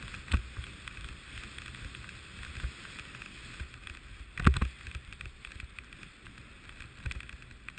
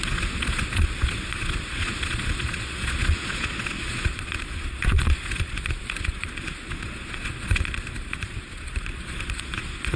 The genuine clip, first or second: first